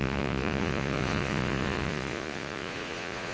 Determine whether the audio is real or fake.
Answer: fake